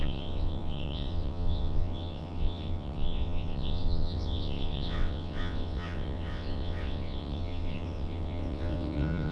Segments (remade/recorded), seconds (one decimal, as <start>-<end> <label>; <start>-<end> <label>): 0.0-9.3 remade